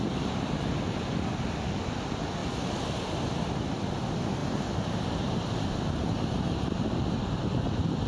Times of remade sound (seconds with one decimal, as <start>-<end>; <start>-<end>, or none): 4.4-7.4